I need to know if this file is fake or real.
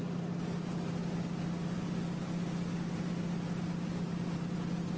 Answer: real